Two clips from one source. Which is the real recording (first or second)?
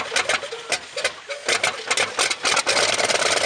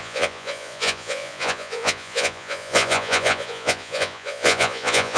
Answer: first